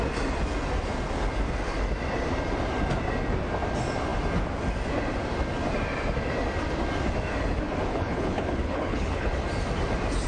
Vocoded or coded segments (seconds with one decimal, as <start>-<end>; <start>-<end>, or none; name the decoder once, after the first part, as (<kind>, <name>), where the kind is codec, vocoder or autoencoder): 7.9-9.3 (codec, HILCodec)